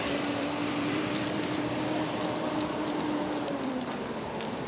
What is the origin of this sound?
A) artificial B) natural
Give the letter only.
A